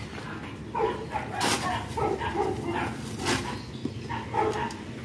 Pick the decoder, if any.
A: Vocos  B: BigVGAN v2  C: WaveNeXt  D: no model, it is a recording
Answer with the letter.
D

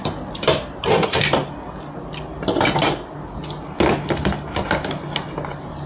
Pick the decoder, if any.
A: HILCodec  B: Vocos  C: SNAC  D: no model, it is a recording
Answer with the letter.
D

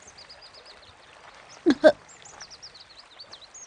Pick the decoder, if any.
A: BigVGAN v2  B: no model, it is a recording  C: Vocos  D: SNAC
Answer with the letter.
B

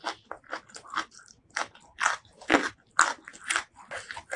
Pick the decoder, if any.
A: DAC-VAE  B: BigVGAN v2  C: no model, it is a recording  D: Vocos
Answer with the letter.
C